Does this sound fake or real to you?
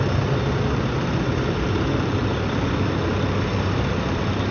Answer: real